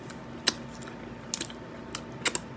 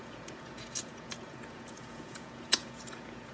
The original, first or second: first